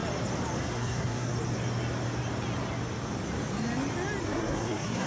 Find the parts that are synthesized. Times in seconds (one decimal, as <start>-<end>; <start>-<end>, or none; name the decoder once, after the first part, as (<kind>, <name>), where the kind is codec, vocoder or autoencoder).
0.6-1.3 (codec, SNAC); 4.2-5.1